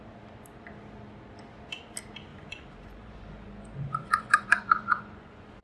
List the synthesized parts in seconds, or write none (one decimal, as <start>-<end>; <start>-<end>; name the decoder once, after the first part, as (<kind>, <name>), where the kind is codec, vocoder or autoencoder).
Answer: 2.3-5.6 (vocoder, Vocos)